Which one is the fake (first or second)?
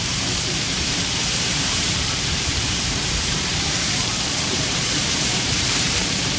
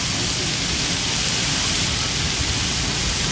first